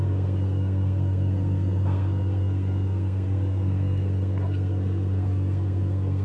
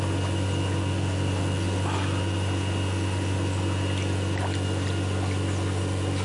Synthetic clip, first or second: first